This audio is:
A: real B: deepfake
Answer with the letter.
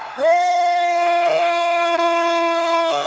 B